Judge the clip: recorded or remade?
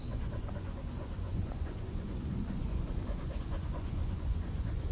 remade